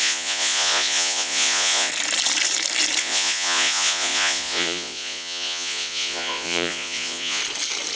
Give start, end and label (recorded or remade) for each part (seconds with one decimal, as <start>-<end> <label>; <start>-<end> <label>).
0.0-1.9 remade; 1.9-3.0 recorded; 3.0-7.4 remade; 7.4-8.0 recorded